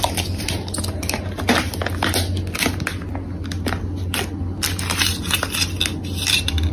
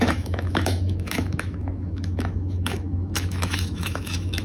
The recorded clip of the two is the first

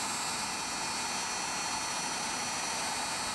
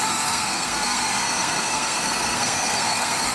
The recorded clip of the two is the first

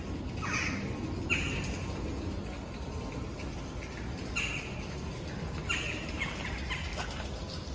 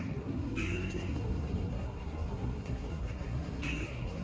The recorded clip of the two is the first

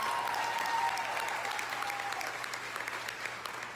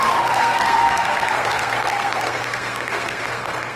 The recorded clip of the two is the first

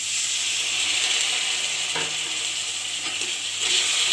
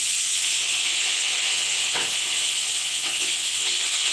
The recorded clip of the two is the first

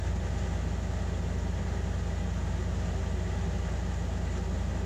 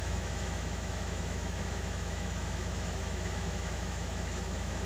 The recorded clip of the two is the first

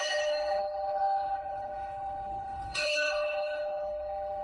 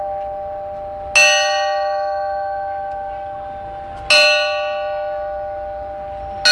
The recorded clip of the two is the second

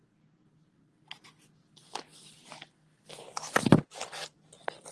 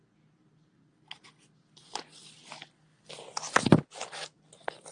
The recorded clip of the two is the second